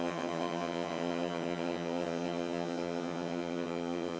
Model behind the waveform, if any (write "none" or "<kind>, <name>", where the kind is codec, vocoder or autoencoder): vocoder, HiFi-GAN